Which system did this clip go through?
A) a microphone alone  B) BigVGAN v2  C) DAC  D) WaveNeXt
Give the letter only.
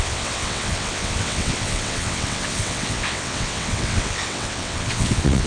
D